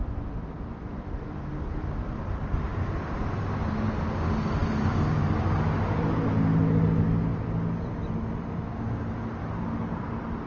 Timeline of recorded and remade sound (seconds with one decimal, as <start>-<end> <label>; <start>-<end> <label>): 0.0-4.6 recorded; 4.6-5.6 remade; 5.6-10.5 recorded